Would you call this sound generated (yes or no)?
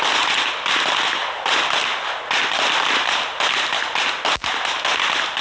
no